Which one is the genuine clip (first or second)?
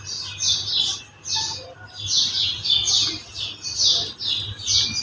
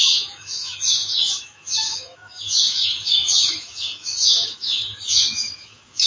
first